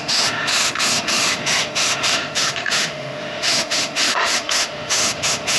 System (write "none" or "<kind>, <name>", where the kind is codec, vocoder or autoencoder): autoencoder, DAC-VAE